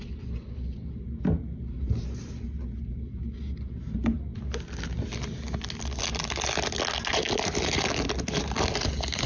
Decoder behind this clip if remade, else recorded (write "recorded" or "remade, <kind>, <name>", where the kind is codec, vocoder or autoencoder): recorded